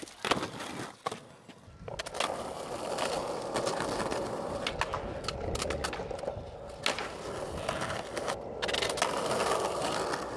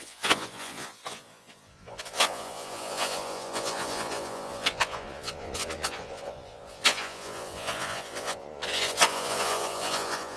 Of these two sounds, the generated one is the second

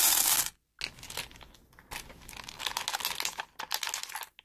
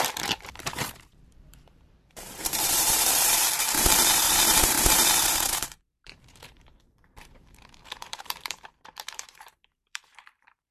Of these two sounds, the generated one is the second